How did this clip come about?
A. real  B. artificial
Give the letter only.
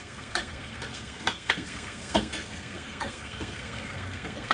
B